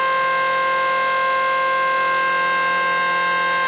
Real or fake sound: real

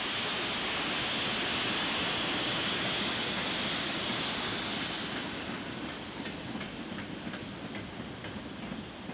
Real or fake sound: real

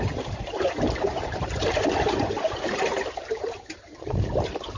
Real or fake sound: fake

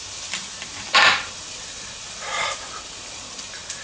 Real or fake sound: fake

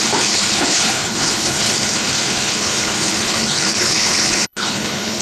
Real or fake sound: fake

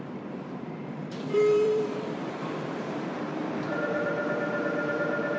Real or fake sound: fake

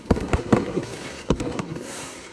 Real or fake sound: fake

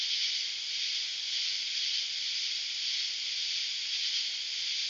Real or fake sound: real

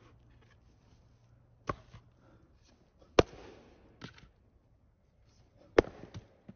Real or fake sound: real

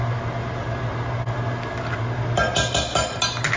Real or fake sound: real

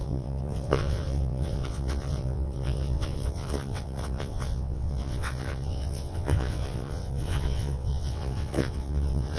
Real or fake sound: fake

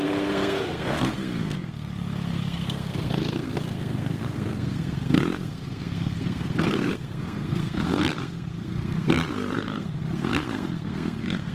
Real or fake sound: fake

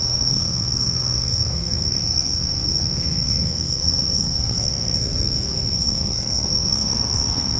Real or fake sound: fake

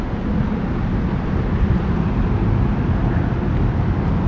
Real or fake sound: real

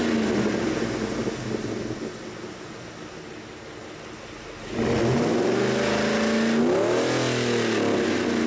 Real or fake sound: real